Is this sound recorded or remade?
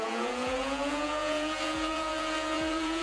remade